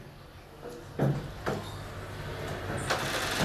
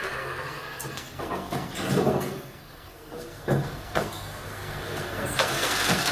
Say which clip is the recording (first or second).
first